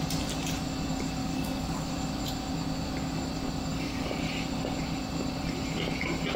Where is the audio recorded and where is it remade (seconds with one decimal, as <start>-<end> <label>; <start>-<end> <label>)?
0.0-1.2 recorded; 1.2-1.9 remade; 1.9-3.7 recorded; 3.7-4.3 remade; 4.3-6.4 recorded